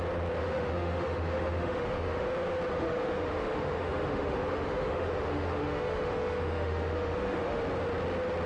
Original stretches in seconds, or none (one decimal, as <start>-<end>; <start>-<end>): 0.0-0.4; 2.3-2.7; 7.6-8.5